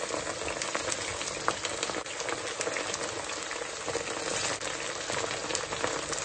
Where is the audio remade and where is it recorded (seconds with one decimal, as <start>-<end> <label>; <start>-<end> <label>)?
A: 0.0-6.2 recorded